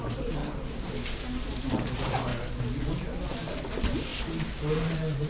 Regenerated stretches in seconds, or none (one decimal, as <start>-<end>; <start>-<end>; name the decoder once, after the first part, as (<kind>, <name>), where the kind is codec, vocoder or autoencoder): 0.0-0.4 (vocoder, BigVGAN v2); 1.7-2.3; 3.3-4.1; 4.7-5.3